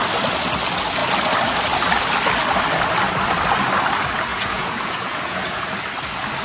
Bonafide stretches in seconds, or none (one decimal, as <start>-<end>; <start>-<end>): 0.0-4.3; 5.6-6.4